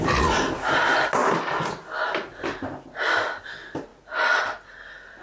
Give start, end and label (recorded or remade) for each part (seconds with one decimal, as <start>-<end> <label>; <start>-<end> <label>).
0.0-5.2 recorded

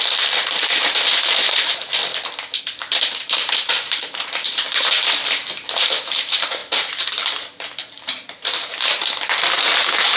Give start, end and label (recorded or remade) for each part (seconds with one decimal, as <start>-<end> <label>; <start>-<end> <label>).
0.0-2.0 remade; 2.0-2.6 recorded; 2.6-5.2 remade; 5.2-5.8 recorded; 5.8-9.0 remade; 9.0-9.6 recorded; 9.6-10.2 remade

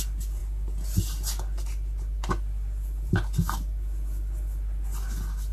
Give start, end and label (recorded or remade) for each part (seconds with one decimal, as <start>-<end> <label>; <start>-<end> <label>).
0.0-5.5 recorded

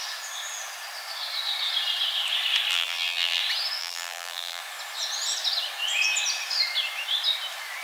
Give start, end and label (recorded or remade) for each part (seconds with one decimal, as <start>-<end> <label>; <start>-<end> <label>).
0.0-2.7 recorded; 2.7-3.4 remade; 3.4-3.8 recorded; 3.8-4.6 remade; 4.6-7.8 recorded

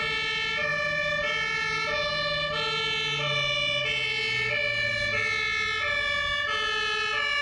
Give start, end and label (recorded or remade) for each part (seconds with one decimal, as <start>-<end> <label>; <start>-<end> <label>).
0.0-7.4 recorded

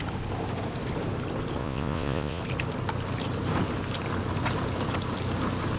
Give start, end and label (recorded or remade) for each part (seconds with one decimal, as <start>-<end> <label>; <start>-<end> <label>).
0.0-1.6 recorded; 1.6-2.4 remade; 2.4-5.8 recorded

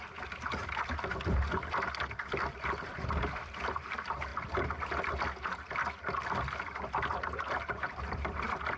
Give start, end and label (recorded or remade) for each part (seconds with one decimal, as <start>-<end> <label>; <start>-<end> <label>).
0.0-8.8 recorded